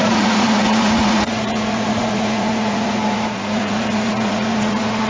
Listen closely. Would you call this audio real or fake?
fake